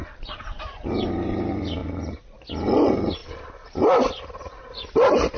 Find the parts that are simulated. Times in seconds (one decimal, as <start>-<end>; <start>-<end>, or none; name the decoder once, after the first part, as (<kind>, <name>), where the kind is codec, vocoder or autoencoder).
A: 0.0-0.9 (vocoder, BigVGAN v2); 1.8-2.5